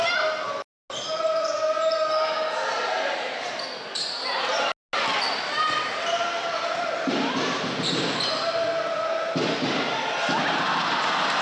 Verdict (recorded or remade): recorded